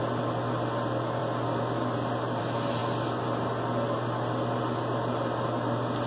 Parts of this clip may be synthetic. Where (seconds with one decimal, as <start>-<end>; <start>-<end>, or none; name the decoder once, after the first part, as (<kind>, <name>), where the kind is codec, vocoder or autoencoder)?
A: none